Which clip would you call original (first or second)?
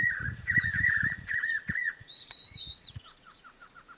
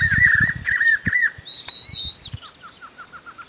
second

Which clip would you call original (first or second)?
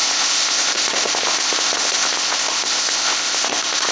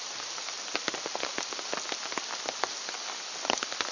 second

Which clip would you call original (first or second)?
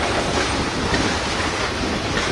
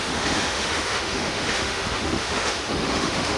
first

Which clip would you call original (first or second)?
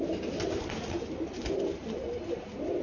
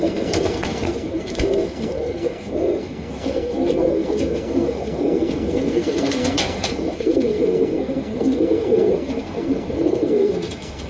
first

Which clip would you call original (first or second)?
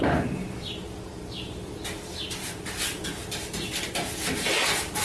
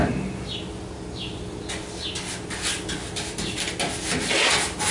second